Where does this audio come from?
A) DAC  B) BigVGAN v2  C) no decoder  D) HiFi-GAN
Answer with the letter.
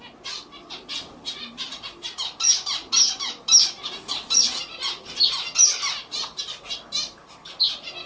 C